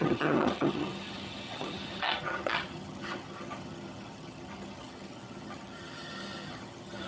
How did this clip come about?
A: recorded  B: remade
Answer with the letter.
B